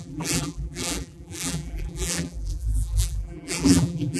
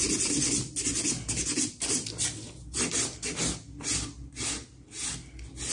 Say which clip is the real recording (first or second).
second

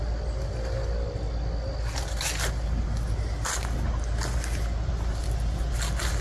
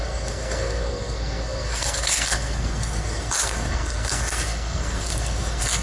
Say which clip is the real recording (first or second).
first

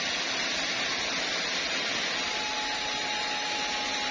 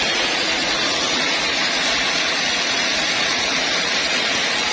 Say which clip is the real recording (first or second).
first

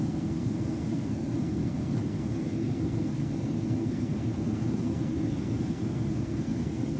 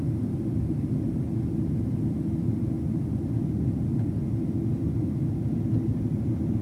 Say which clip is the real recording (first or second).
second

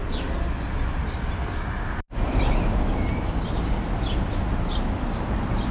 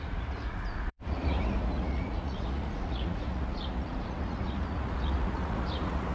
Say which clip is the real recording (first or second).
first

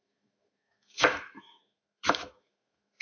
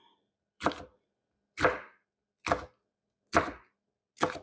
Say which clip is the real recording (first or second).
second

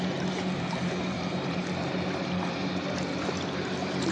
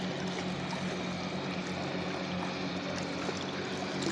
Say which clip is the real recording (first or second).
second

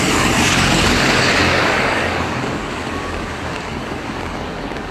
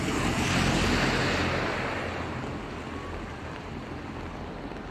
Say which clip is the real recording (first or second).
second